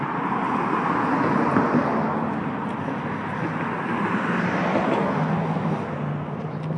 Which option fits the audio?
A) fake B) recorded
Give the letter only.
B